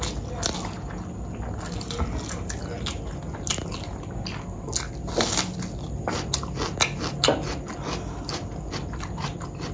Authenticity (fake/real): real